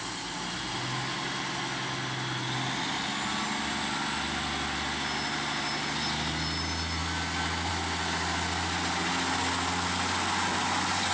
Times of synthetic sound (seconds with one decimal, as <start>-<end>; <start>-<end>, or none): none